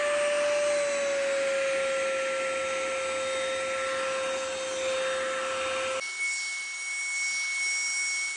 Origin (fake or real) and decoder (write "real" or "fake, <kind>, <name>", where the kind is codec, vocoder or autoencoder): real